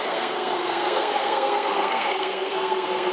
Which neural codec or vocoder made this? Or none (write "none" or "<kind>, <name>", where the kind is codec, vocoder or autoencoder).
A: codec, SNAC